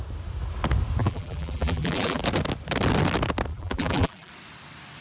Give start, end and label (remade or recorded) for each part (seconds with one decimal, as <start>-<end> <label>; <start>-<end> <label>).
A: 0.0-1.0 recorded; 1.0-2.2 remade; 2.2-3.5 recorded; 3.5-4.3 remade; 4.3-5.0 recorded